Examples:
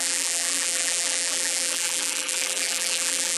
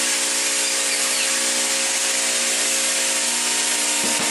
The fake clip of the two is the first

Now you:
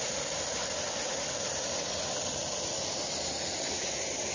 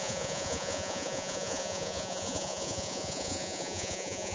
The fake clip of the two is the second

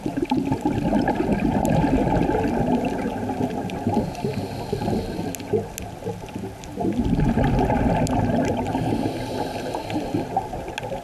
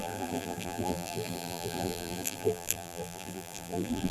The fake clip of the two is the second